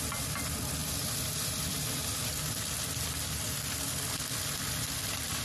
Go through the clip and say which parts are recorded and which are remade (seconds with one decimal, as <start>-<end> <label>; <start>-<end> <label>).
0.0-5.4 remade